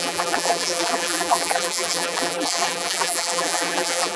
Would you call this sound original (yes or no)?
no